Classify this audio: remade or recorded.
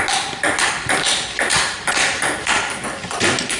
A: recorded